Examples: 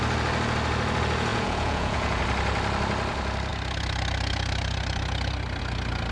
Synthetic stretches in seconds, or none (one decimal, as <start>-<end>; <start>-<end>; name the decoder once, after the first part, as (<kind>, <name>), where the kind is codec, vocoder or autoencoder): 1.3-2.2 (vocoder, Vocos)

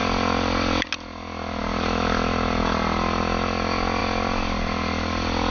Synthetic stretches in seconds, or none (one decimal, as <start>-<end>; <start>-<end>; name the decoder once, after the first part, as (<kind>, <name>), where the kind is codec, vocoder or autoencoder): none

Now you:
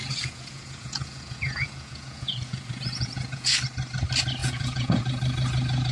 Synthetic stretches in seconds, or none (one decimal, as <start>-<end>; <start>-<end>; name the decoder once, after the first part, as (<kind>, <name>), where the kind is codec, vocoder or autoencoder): 0.0-3.5 (vocoder, Vocos); 4.4-5.0